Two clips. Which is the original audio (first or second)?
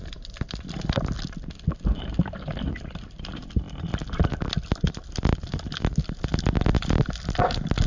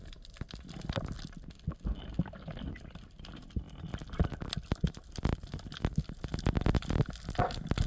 second